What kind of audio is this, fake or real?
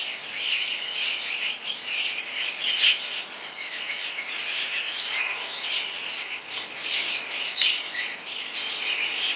real